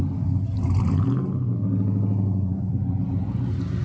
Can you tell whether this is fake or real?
real